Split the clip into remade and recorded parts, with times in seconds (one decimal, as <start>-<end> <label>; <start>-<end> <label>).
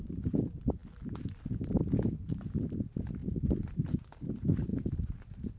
0.0-3.2 recorded; 3.2-4.3 remade; 4.3-4.7 recorded; 4.7-5.6 remade